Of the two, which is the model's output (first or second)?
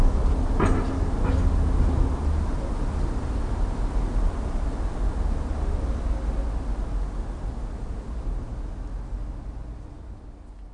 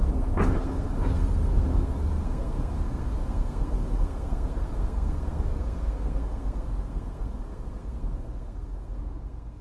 second